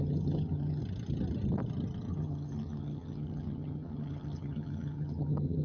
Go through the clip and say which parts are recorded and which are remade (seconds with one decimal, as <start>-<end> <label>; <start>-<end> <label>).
0.0-0.8 remade; 0.8-2.1 recorded; 2.1-5.6 remade